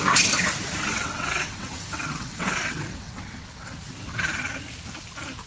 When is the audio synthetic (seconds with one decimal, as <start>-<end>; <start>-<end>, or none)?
0.9-4.2